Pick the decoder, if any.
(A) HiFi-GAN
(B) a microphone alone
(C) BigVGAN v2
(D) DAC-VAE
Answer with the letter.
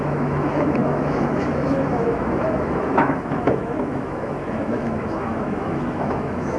D